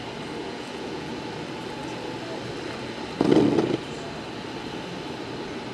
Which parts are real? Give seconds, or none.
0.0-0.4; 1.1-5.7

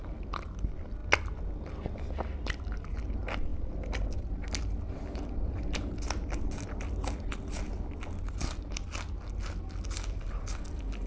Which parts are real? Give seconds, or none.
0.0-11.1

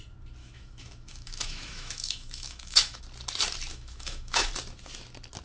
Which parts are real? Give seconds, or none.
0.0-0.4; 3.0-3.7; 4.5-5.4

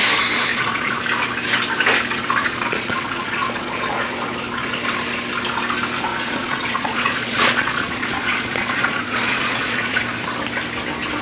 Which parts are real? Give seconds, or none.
0.0-0.5; 1.0-2.4; 4.1-6.1; 10.0-11.2

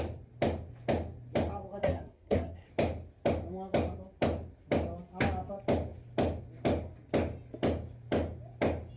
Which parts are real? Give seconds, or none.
0.0-1.8; 2.7-9.0

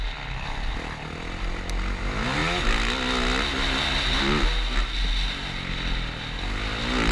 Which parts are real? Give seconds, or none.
0.0-7.1

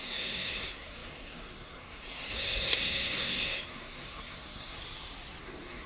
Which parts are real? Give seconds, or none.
4.8-5.4